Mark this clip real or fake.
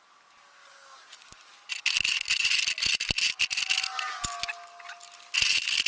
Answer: real